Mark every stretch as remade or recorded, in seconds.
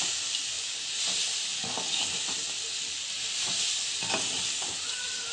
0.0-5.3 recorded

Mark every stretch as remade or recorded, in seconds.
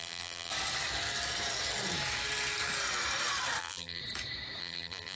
0.0-0.5 remade; 0.5-3.6 recorded; 3.6-4.0 remade; 4.0-4.6 recorded; 4.6-5.2 remade